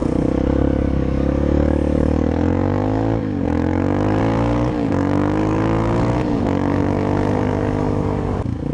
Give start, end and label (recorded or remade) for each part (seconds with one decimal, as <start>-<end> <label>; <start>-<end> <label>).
0.0-8.7 remade